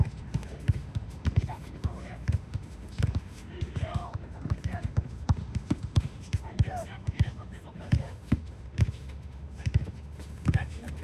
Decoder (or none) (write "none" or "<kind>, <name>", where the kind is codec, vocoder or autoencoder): autoencoder, DAC-VAE